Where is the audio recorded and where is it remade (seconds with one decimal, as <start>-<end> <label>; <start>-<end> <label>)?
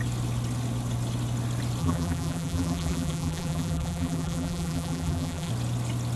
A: 0.0-1.8 recorded; 1.8-5.5 remade; 5.5-6.2 recorded